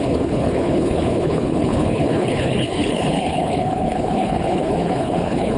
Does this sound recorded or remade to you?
remade